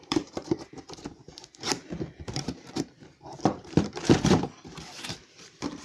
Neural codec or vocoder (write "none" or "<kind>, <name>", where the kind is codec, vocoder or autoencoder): vocoder, BigVGAN v2